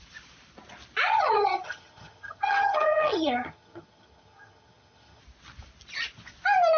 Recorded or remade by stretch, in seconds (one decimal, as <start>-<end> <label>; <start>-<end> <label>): 0.0-1.1 recorded; 1.1-5.2 remade; 5.2-6.8 recorded